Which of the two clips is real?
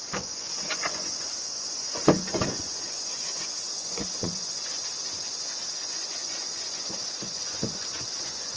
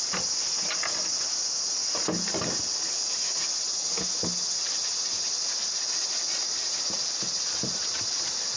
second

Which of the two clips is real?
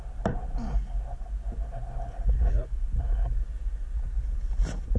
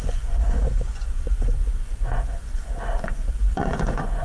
first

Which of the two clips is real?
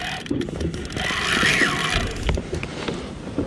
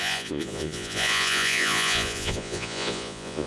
first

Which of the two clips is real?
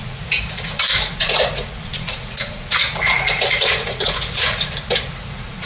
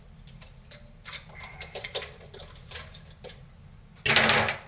second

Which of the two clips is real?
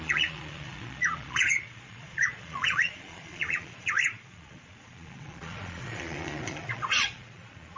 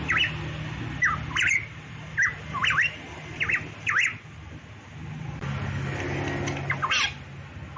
second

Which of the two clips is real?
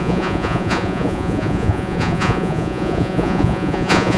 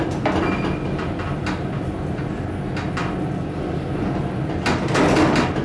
second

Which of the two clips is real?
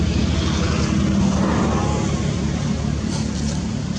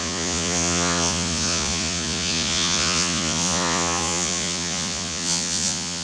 first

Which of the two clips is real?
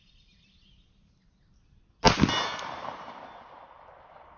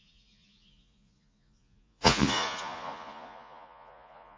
first